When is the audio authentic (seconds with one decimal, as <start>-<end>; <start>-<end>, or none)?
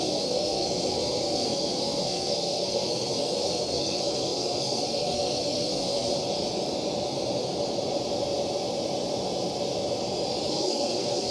6.1-10.5